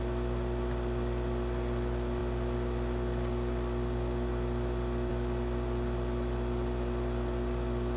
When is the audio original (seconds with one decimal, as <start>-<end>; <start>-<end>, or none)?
0.0-8.0